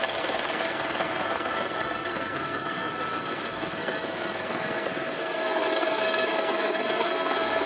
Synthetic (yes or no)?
yes